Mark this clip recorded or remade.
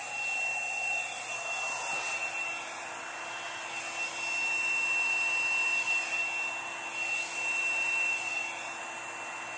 recorded